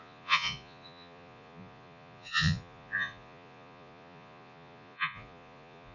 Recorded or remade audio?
remade